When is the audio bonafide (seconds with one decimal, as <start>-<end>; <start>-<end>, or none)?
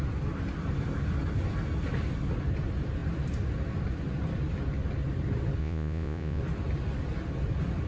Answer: 0.0-5.6; 6.4-7.9